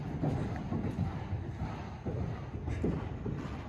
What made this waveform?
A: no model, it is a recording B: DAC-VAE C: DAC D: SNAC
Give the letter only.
A